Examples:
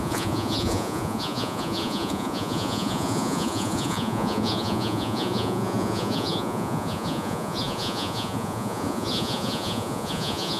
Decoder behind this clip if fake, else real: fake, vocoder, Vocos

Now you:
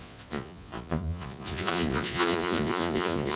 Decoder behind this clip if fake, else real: fake, vocoder, Vocos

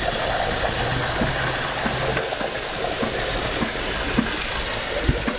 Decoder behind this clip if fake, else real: real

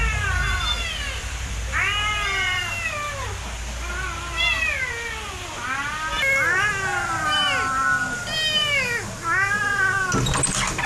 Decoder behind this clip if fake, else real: real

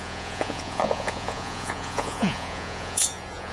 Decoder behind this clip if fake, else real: fake, vocoder, Vocos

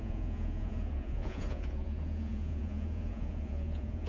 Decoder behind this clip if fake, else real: fake, vocoder, Vocos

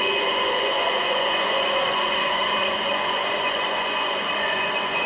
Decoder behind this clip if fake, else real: fake, vocoder, Vocos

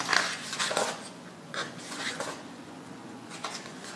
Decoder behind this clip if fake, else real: fake, vocoder, Vocos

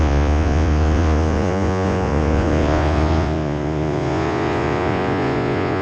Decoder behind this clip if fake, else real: fake, vocoder, Vocos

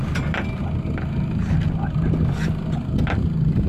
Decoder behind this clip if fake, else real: real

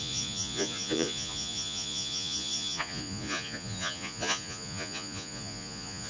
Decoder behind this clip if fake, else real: fake, vocoder, Vocos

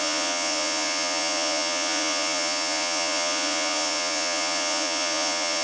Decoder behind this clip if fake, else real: fake, vocoder, Vocos